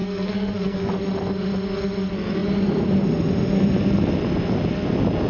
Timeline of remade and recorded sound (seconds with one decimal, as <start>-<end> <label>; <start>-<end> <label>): 0.0-0.9 remade; 0.9-5.3 recorded